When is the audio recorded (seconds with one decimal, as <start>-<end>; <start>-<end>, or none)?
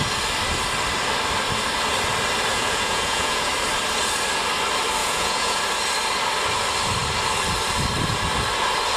0.0-2.5; 3.5-5.0; 5.6-9.0